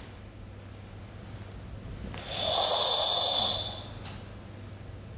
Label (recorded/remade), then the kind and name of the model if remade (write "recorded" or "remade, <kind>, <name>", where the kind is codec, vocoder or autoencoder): recorded